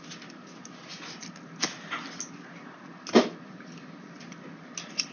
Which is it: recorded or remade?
recorded